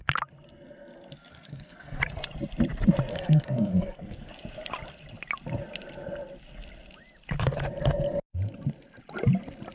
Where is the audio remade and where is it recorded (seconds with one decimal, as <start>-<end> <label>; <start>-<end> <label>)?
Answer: 0.0-1.3 recorded; 1.3-2.0 remade; 2.0-3.1 recorded; 3.1-4.3 remade; 4.3-9.7 recorded